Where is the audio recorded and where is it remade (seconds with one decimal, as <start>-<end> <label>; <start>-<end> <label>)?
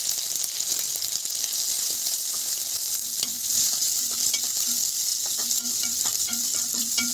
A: 0.0-3.3 recorded; 3.3-4.1 remade; 4.1-7.1 recorded